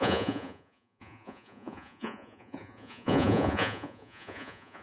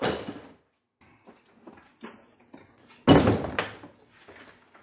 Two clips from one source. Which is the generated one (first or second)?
first